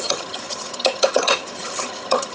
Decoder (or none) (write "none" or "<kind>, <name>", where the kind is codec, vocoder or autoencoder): vocoder, HiFi-GAN